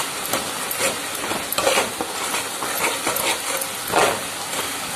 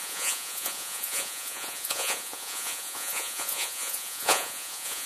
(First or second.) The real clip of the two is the first